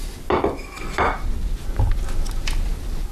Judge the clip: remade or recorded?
recorded